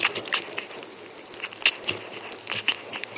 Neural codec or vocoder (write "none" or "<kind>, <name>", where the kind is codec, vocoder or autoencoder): none